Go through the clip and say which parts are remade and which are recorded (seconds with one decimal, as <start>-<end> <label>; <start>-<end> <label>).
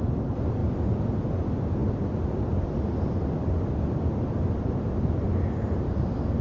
0.0-5.3 remade; 5.3-6.0 recorded; 6.0-6.4 remade